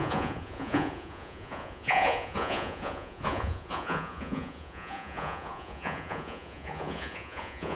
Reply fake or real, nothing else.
fake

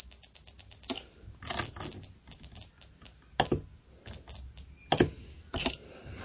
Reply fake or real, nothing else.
real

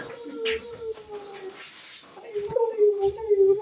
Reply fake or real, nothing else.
real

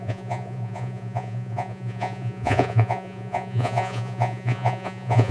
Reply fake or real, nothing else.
fake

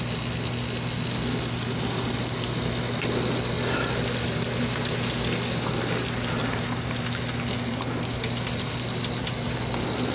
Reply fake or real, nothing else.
real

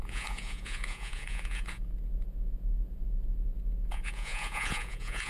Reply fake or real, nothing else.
fake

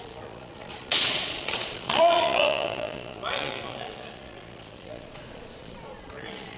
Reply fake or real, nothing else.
fake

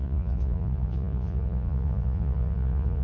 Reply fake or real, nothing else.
fake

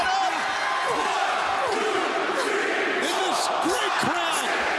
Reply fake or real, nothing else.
real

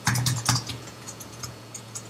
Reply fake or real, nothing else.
fake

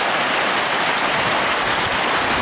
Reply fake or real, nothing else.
real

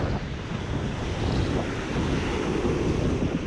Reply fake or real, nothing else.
real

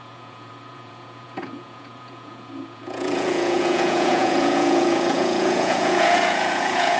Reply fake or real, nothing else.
fake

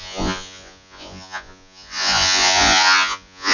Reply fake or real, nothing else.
fake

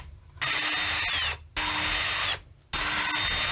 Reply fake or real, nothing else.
real